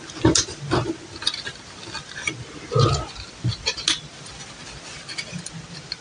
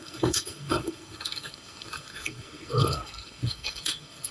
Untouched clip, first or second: first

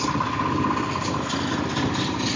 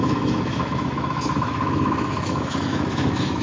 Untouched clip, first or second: first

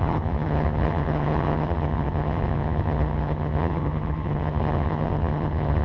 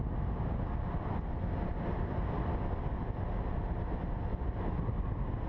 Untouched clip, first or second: second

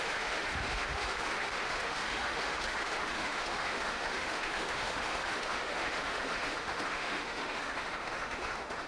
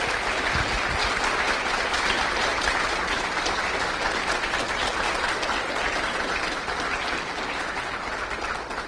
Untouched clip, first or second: second